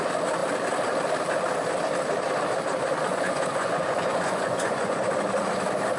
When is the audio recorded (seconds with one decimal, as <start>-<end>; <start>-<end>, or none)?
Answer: 0.0-3.1; 5.0-6.0